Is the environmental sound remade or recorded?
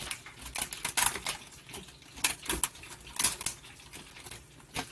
recorded